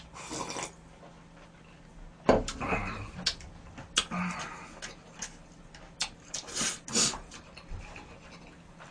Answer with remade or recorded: recorded